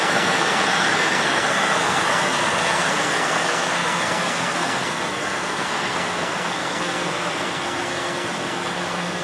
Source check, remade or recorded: remade